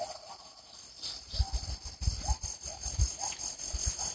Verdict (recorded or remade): recorded